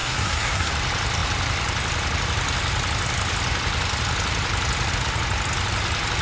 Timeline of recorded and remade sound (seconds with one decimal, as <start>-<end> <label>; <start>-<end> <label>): 0.0-0.7 remade; 0.7-6.2 recorded